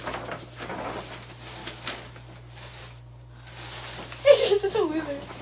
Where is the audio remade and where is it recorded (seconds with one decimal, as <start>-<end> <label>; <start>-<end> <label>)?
0.0-5.4 recorded

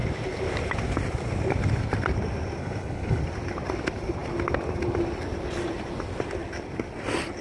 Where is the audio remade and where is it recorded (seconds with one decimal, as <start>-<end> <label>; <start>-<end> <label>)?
0.0-2.6 recorded; 2.6-3.2 remade; 3.2-7.4 recorded